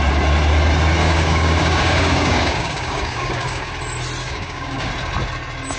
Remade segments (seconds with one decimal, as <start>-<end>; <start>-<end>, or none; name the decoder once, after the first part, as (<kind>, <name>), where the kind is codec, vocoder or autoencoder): 1.0-3.7 (codec, DAC); 4.2-4.9